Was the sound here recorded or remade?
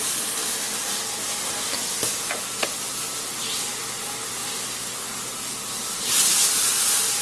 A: recorded